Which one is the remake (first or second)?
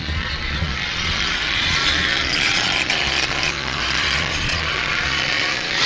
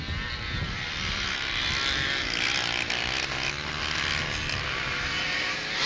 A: first